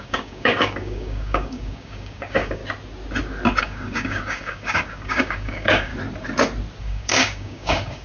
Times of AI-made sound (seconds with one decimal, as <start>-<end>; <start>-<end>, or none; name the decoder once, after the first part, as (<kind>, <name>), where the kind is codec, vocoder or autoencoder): 0.0-2.6 (codec, DAC); 3.6-5.9; 6.8-8.0